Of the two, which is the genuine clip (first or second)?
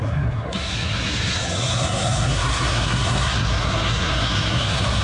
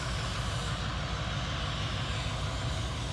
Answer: second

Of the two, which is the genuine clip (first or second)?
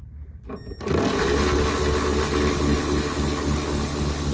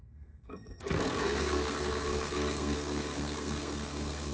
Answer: first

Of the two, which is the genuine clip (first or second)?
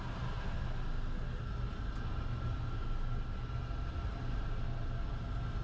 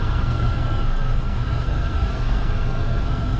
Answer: first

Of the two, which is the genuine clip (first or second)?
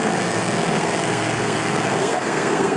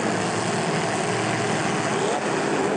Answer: second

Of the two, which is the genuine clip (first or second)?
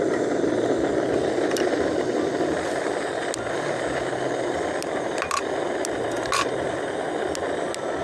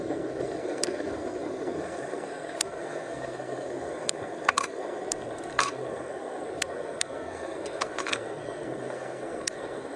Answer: first